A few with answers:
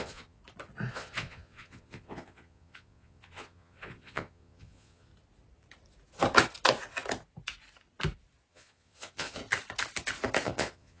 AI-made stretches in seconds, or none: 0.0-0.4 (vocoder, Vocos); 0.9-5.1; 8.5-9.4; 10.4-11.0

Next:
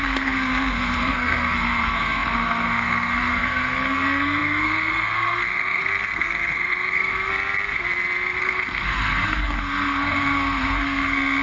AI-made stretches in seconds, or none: 0.0-7.3 (codec, SNAC); 8.4-11.4

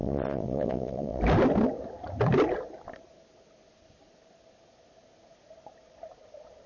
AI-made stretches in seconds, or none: 0.0-1.2 (vocoder, WaveNeXt)

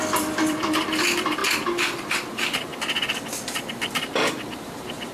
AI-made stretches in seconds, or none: 0.0-2.7 (vocoder, BigVGAN v2); 4.3-5.1